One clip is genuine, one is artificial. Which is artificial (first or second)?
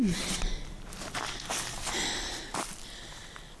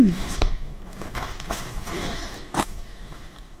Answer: second